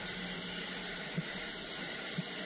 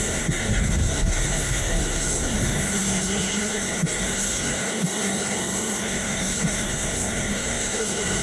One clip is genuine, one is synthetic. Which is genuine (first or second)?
first